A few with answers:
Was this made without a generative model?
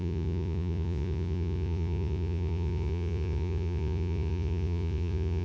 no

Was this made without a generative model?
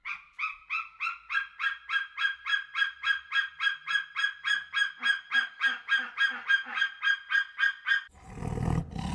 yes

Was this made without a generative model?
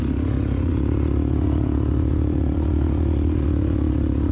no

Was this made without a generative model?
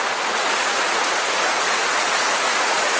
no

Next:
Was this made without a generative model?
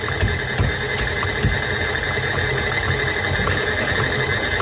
yes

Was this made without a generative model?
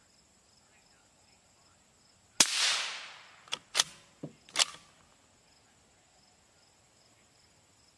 yes